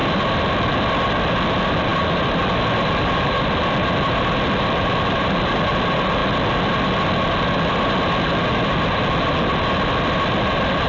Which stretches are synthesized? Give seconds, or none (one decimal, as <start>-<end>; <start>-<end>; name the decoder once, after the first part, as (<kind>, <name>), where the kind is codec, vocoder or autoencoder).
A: none